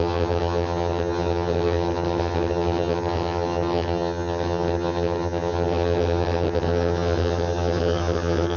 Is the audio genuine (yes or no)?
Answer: no